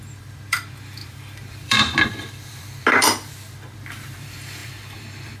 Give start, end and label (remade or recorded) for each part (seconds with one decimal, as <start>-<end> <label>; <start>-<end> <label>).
0.0-5.4 remade